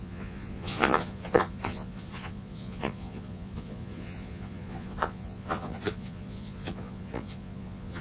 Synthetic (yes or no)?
yes